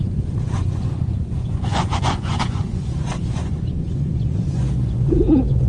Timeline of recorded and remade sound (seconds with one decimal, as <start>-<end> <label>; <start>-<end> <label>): 0.0-5.7 remade